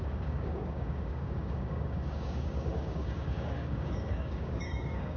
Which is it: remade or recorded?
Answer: remade